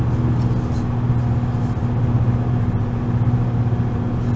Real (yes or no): yes